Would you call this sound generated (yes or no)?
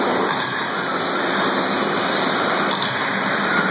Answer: no